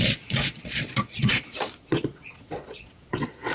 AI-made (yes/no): yes